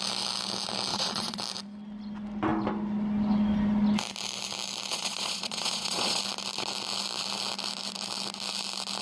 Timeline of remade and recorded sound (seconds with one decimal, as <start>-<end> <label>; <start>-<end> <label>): 0.0-0.9 recorded; 0.9-1.4 remade; 1.4-4.9 recorded; 4.9-6.2 remade; 6.2-9.0 recorded

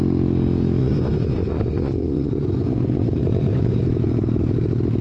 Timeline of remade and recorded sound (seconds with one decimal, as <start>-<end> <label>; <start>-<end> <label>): 0.0-0.8 recorded; 0.8-3.8 remade; 3.8-5.0 recorded

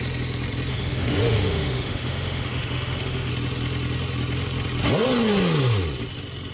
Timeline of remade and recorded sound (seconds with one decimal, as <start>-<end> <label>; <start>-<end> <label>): 0.0-0.7 recorded; 0.7-3.3 remade; 3.3-6.5 recorded

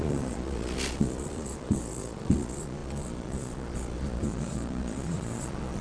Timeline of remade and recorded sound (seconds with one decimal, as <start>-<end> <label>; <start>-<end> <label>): 0.0-5.8 remade

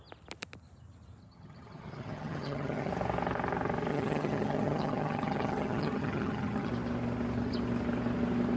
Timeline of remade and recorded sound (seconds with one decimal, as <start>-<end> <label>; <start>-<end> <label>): 0.0-1.2 recorded; 1.2-2.9 remade; 2.9-3.9 recorded; 3.9-6.7 remade; 6.7-8.6 recorded